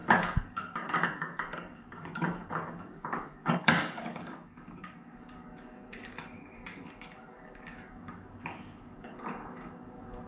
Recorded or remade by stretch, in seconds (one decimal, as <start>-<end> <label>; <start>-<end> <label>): 0.0-10.3 remade